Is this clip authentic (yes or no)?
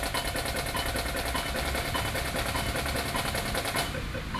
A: yes